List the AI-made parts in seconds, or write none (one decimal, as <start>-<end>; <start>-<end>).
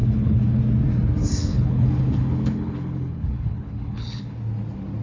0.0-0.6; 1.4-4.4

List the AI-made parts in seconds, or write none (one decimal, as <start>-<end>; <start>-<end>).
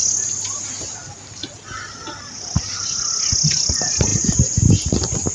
none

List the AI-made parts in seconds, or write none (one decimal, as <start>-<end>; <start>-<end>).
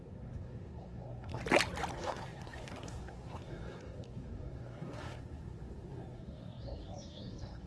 0.0-1.4; 1.9-7.7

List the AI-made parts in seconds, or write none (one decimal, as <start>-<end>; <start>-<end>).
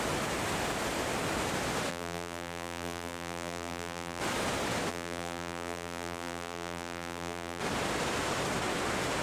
1.9-4.2; 4.9-7.6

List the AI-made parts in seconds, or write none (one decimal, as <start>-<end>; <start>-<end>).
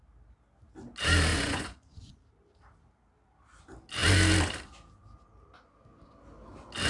1.3-2.1